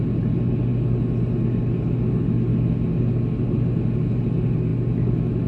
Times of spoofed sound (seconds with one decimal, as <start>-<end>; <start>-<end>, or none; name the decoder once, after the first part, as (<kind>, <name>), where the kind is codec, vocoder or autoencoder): none